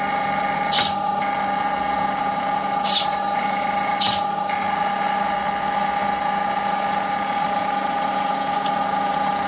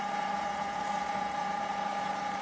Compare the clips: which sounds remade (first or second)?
second